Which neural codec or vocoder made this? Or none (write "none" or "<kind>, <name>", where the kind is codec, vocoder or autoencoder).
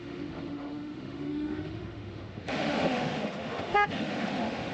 autoencoder, DAC-VAE